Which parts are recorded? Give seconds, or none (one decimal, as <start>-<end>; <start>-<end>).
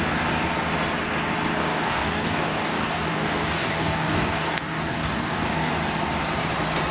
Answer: 0.0-1.6; 5.7-6.9